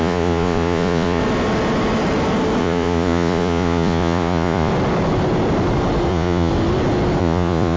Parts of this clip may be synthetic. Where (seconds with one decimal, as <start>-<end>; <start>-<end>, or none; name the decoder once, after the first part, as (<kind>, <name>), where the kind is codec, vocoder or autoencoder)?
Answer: 0.0-1.2 (vocoder, Vocos); 2.6-4.7; 6.1-6.5; 7.2-7.8